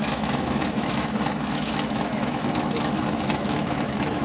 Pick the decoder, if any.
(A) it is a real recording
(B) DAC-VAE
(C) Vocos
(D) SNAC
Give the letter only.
B